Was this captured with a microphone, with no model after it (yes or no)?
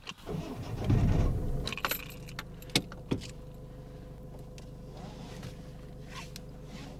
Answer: yes